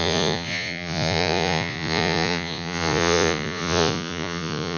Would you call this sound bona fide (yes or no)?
no